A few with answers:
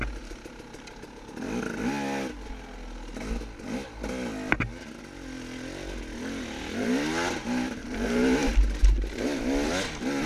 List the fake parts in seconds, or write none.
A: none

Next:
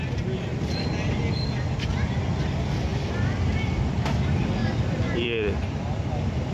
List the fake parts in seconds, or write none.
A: 4.6-5.8 (vocoder, BigVGAN v2)

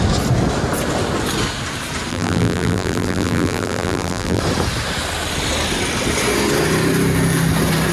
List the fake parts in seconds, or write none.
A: 2.1-4.4 (vocoder, BigVGAN v2)

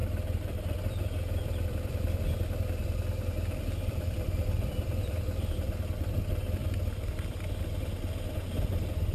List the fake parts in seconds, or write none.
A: 0.0-2.2 (vocoder, BigVGAN v2); 2.8-6.1; 6.6-7.6

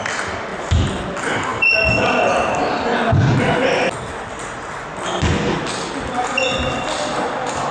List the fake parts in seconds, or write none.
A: 1.5-2.1 (vocoder, BigVGAN v2)

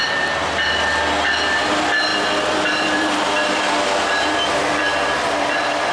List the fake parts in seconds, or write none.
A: 2.1-5.9 (vocoder, BigVGAN v2)